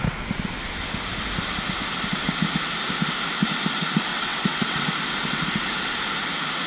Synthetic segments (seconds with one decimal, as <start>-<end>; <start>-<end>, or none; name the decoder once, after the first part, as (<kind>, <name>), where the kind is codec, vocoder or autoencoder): 4.1-4.8 (vocoder, WaveNeXt)